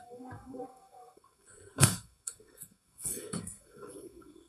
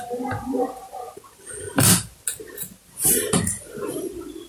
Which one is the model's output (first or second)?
first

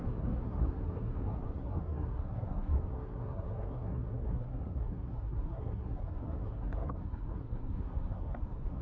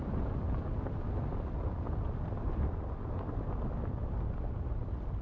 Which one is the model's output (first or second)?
first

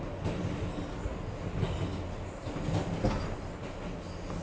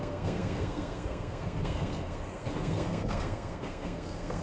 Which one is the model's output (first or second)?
second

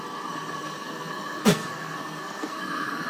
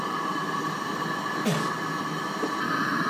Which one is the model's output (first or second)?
first